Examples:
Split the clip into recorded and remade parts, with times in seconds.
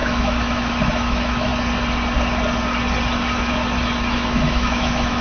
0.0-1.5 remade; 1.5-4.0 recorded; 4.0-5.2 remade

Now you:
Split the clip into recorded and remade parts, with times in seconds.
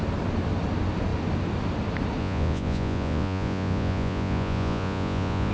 0.0-2.2 recorded; 2.2-5.5 remade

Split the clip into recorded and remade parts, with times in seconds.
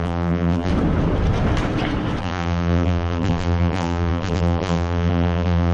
0.0-0.7 remade; 0.7-2.2 recorded; 2.2-5.7 remade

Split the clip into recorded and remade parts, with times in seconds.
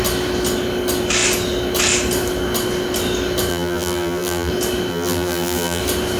0.0-3.5 recorded; 3.5-4.5 remade; 4.5-4.9 recorded; 4.9-5.8 remade; 5.8-6.2 recorded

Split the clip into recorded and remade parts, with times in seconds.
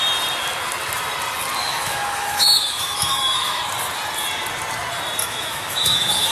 0.0-1.6 recorded; 1.6-3.6 remade; 3.6-5.2 recorded; 5.2-6.3 remade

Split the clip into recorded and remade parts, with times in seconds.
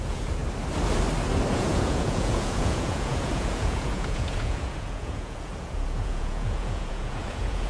0.0-0.4 remade; 0.4-1.5 recorded; 1.5-7.7 remade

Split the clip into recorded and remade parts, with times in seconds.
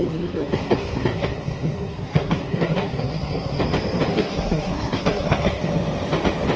0.0-3.6 remade; 3.6-4.1 recorded; 4.1-5.7 remade; 5.7-6.6 recorded